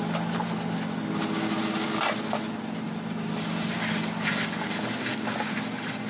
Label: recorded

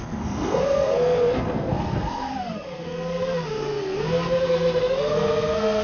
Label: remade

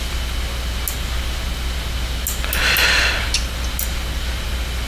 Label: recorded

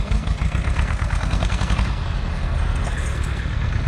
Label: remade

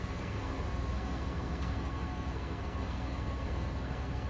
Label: remade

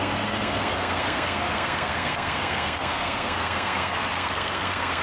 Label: remade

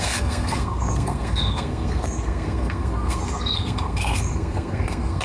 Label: remade